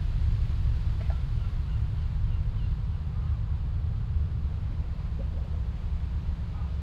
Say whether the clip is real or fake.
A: real